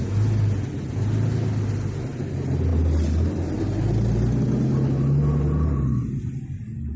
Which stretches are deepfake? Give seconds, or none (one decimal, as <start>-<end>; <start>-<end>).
none